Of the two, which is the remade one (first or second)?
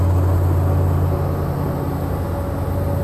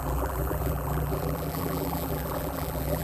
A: second